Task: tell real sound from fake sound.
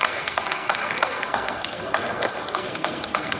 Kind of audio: fake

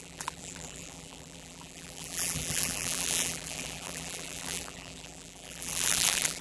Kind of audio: fake